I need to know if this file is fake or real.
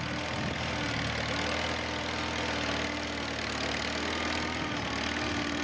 real